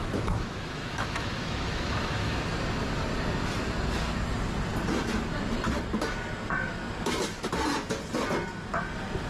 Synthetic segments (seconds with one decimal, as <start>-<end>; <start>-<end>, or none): 0.0-2.4